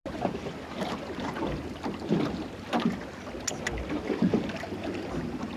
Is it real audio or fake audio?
real